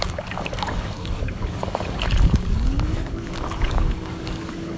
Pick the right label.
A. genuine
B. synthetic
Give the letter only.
B